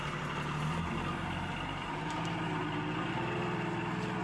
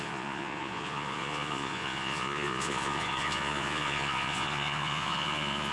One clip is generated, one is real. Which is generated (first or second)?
second